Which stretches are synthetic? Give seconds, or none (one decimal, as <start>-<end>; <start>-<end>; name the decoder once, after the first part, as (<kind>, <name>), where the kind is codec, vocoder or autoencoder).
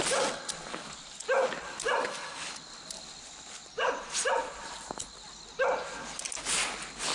3.2-4.9 (vocoder, BigVGAN v2)